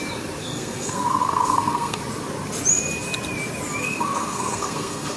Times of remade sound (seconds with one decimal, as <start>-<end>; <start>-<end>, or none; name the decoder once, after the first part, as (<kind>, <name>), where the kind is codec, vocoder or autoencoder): 0.4-2.0 (codec, SNAC); 3.8-5.2